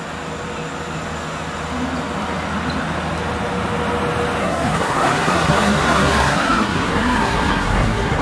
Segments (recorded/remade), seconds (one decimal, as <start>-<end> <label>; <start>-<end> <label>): 0.0-4.4 recorded; 4.4-8.2 remade